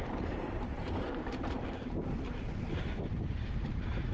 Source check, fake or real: fake